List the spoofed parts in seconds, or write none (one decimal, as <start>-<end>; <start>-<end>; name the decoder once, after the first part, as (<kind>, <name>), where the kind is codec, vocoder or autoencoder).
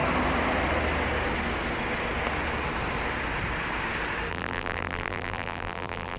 4.3-6.2 (vocoder, BigVGAN v2)